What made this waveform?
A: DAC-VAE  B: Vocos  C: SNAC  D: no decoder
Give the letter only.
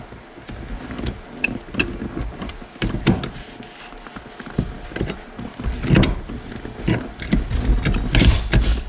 D